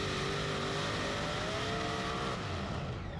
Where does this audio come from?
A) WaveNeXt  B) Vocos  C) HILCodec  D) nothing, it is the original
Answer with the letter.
D